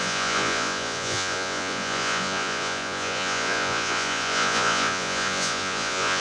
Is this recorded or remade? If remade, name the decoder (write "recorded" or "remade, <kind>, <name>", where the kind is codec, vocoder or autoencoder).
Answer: remade, vocoder, Vocos